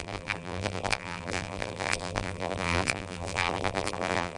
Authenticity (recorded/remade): remade